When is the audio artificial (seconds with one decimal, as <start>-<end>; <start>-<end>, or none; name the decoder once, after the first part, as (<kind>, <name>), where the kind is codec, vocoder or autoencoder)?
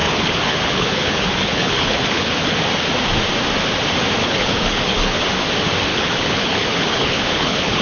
0.0-2.6 (codec, HILCodec); 4.2-5.2; 5.9-7.8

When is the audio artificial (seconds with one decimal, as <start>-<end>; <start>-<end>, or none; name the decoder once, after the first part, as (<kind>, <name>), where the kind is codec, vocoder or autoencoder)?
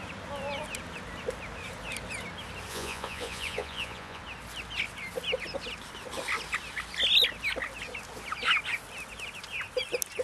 2.7-4.2 (vocoder, Vocos)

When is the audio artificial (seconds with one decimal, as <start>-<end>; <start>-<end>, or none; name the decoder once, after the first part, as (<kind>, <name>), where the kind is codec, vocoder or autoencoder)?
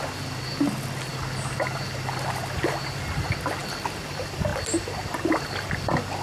none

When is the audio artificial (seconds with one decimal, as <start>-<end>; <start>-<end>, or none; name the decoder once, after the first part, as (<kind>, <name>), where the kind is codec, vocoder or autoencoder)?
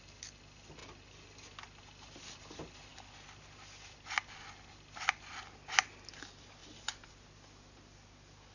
none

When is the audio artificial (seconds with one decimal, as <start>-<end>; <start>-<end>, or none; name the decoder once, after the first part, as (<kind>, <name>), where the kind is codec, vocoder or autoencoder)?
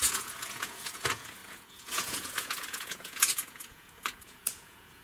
0.0-5.0 (vocoder, Vocos)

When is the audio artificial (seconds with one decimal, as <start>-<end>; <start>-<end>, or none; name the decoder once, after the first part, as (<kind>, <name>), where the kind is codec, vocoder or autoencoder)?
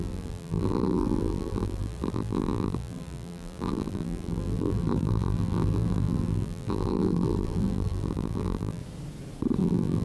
0.0-8.8 (vocoder, BigVGAN v2); 9.6-10.0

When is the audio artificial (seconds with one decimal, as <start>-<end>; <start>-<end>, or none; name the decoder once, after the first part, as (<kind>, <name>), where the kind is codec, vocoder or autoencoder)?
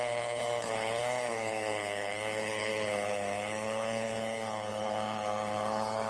0.0-6.1 (codec, HILCodec)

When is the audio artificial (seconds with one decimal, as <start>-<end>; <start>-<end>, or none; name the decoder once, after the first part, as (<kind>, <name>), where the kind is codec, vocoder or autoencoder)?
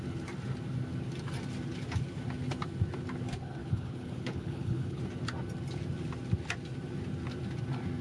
3.6-5.0 (codec, HILCodec)